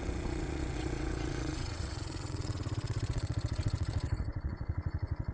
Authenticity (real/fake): fake